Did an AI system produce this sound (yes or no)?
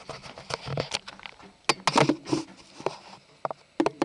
no